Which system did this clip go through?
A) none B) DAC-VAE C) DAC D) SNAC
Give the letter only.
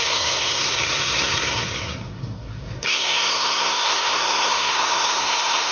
D